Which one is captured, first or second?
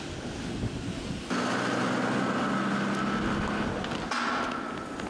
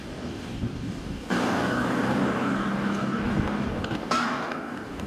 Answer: first